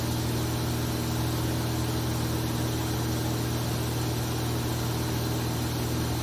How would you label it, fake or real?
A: real